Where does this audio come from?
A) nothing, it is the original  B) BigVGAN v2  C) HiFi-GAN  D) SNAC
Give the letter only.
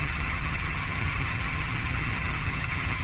C